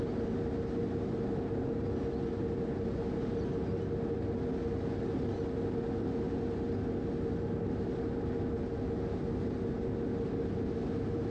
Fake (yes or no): no